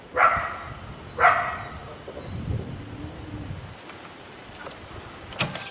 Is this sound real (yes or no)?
yes